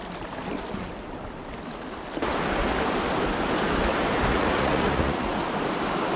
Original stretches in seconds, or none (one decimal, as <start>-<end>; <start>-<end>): 0.0-4.3; 5.3-6.2

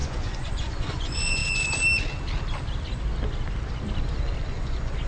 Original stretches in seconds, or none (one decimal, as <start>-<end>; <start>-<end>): 1.4-4.5

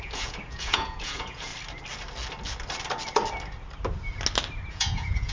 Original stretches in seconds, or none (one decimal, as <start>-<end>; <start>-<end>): 1.5-4.7

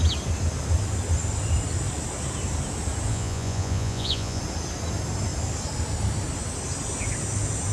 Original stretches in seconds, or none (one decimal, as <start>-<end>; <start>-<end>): 0.0-3.1; 4.4-7.7

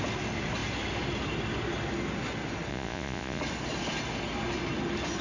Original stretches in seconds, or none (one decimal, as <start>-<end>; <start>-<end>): 0.0-2.7; 3.4-5.2

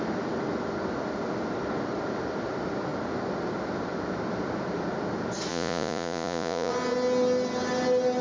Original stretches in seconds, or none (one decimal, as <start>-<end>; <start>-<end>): 0.0-5.5; 6.7-8.2

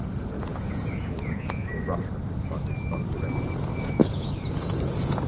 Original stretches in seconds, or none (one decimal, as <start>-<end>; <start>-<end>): 1.6-3.4

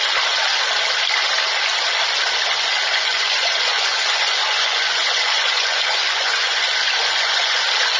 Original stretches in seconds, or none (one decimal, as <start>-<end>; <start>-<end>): 0.0-2.9; 7.6-8.0